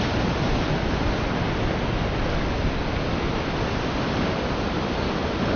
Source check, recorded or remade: recorded